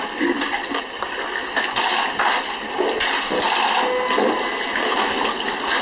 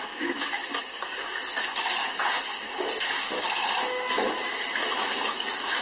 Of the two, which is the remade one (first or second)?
second